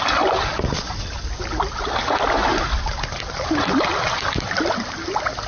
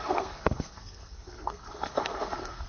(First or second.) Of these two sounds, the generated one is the second